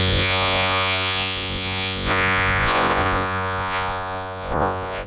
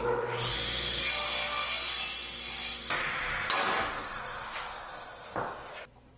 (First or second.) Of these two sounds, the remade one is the first